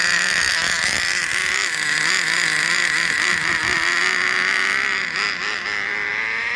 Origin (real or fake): real